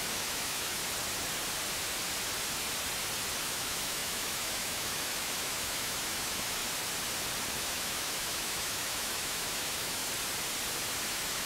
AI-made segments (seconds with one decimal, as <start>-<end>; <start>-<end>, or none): 0.0-0.8; 3.4-6.6; 7.5-10.0; 11.1-11.5